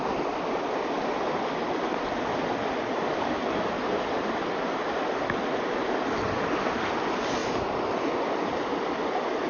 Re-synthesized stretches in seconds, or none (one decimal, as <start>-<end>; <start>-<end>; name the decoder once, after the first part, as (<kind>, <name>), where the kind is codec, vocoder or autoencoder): 0.0-3.4 (vocoder, BigVGAN v2); 4.8-7.4